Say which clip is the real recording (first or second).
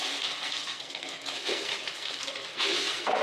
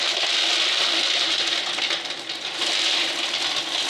second